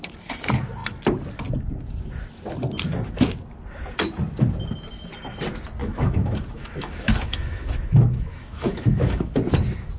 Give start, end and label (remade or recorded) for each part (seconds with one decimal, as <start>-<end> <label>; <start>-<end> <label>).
0.0-5.8 recorded; 5.8-9.3 remade; 9.3-10.0 recorded